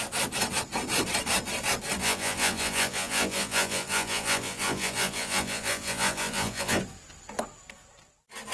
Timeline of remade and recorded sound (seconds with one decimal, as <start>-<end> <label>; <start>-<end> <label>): 0.0-2.0 recorded; 2.0-6.8 remade; 6.8-8.5 recorded